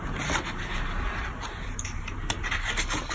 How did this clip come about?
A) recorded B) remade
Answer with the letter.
A